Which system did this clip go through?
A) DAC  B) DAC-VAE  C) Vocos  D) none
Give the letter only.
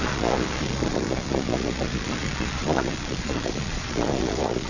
C